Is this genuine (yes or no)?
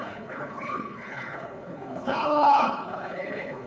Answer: no